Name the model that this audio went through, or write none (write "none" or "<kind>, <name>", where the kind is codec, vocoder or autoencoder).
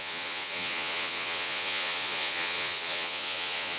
vocoder, Vocos